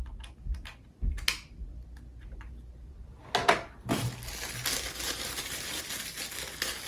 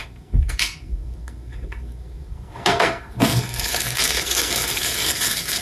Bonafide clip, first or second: first